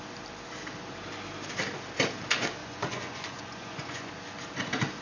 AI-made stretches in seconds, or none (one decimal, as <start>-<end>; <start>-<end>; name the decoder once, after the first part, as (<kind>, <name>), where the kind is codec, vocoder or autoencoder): 2.6-4.1 (vocoder, Vocos)